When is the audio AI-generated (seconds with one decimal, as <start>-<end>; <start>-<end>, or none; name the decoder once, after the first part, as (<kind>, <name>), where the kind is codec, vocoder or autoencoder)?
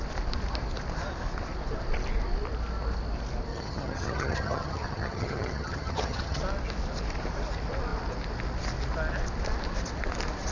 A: 3.5-6.4 (vocoder, HiFi-GAN)